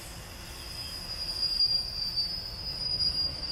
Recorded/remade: recorded